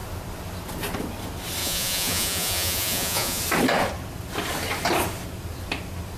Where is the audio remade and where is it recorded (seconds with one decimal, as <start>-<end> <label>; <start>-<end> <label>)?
0.0-1.6 recorded; 1.6-3.4 remade; 3.4-6.2 recorded